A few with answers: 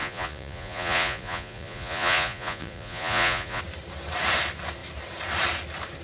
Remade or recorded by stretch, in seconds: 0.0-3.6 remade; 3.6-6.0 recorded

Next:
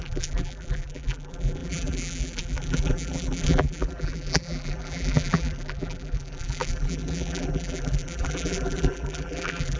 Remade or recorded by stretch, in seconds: 0.0-9.8 remade